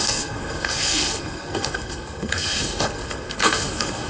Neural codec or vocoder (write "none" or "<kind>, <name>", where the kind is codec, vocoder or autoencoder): codec, SNAC